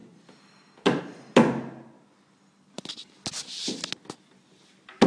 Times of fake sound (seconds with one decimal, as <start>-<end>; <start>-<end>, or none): none